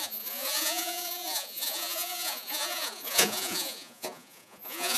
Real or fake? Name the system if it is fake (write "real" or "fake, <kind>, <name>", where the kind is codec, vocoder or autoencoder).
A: fake, vocoder, Vocos